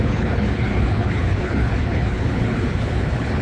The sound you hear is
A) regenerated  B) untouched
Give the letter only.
A